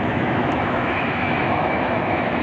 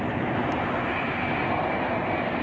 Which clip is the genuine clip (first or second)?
second